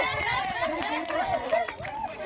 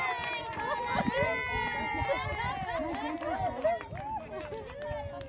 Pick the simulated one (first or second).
first